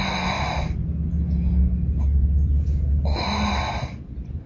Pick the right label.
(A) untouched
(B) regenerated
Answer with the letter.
A